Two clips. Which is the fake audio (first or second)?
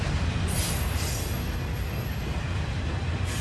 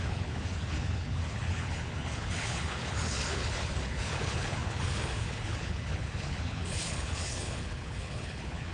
second